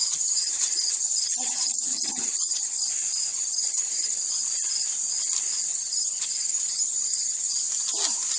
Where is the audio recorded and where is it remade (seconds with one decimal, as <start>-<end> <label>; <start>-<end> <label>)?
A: 0.0-2.9 remade; 2.9-3.3 recorded; 3.3-4.2 remade; 4.2-5.7 recorded; 5.7-7.6 remade; 7.6-8.4 recorded